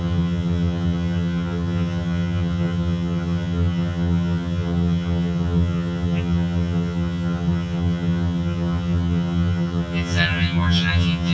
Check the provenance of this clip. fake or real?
fake